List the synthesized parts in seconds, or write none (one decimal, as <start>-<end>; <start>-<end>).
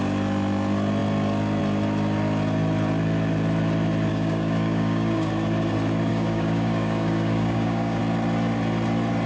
4.1-5.3; 6.1-8.0